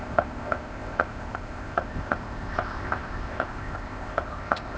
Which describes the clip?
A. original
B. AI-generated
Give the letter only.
B